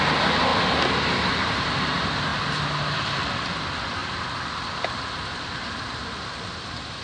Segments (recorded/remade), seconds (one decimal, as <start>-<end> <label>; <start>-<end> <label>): 0.0-7.0 recorded